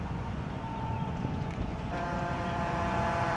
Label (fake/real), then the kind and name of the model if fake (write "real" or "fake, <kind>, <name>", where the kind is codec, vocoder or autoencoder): fake, vocoder, Vocos